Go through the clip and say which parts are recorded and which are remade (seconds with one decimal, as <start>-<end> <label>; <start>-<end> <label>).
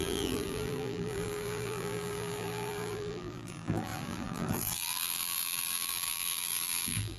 0.0-7.2 remade